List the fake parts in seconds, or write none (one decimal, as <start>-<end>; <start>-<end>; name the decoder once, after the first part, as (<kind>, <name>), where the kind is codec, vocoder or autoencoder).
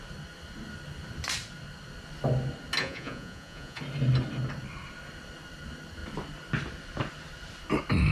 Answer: 2.8-3.8 (vocoder, Vocos)